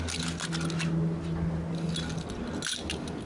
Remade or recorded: recorded